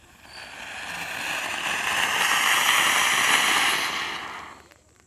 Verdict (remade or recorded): recorded